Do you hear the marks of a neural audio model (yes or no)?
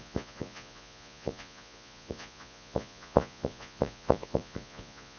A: yes